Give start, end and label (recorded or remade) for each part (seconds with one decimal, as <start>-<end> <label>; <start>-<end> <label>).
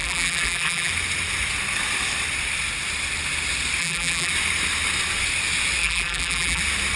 0.0-0.9 remade; 0.9-3.8 recorded; 3.8-4.3 remade; 4.3-5.8 recorded; 5.8-6.6 remade; 6.6-7.0 recorded